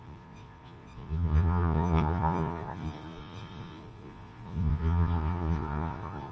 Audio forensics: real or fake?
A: fake